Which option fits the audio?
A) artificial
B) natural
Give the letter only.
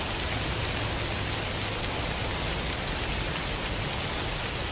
B